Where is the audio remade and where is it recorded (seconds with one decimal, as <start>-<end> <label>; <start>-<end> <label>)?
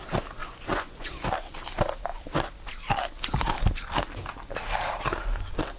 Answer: 0.0-0.4 recorded; 0.4-1.1 remade; 1.1-5.8 recorded